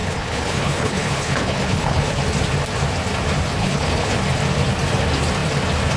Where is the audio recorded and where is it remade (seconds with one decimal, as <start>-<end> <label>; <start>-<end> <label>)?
0.0-2.2 remade; 2.2-3.6 recorded; 3.6-4.1 remade; 4.1-6.0 recorded

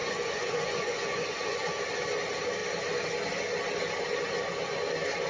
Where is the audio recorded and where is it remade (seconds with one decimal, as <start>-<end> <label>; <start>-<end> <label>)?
0.0-1.8 remade; 1.8-5.3 recorded